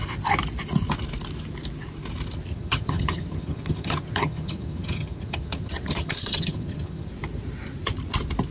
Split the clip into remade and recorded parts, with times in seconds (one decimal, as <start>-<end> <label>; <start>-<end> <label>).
0.0-2.5 recorded; 2.5-7.1 remade; 7.1-8.5 recorded